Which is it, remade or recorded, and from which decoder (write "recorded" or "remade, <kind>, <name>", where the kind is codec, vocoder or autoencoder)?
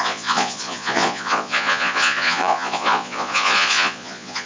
remade, vocoder, Vocos